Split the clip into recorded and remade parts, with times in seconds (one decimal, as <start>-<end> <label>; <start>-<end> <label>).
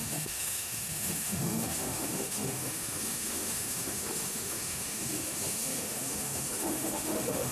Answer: 0.0-7.5 remade